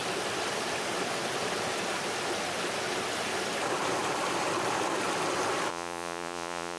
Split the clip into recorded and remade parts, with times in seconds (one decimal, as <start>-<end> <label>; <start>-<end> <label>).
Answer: 0.0-5.7 recorded; 5.7-6.8 remade

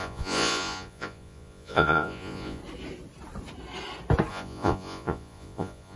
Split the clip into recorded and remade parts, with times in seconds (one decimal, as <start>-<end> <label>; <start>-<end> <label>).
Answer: 0.0-2.6 remade; 2.6-4.3 recorded; 4.3-6.0 remade

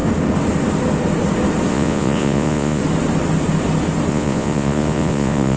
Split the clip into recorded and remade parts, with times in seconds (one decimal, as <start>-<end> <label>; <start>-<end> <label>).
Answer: 0.0-1.7 recorded; 1.7-2.8 remade; 2.8-4.1 recorded; 4.1-5.6 remade

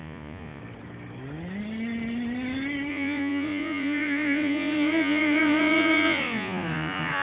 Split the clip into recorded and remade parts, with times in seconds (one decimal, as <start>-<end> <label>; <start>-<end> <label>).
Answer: 0.0-0.6 remade; 0.6-2.9 recorded; 2.9-7.2 remade

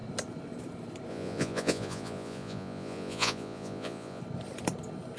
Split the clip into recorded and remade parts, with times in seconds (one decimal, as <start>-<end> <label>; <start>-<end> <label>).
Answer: 0.0-1.1 recorded; 1.1-4.2 remade; 4.2-5.2 recorded

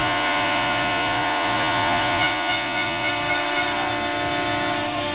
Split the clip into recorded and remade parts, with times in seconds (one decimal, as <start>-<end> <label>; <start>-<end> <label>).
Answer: 0.0-3.1 remade; 3.1-5.1 recorded

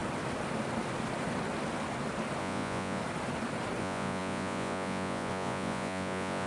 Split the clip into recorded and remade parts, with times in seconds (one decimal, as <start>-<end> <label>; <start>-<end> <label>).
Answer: 0.0-2.4 recorded; 2.4-3.0 remade; 3.0-3.8 recorded; 3.8-6.5 remade